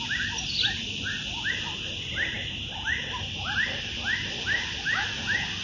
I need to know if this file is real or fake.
real